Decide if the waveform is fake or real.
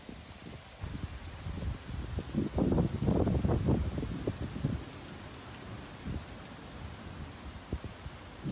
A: real